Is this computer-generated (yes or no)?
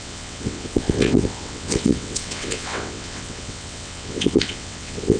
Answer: yes